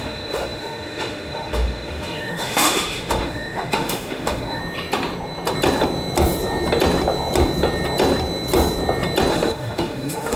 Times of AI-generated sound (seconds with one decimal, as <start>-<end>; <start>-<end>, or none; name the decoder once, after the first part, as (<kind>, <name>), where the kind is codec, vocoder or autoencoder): 0.0-4.6 (autoencoder, DAC-VAE); 9.3-10.4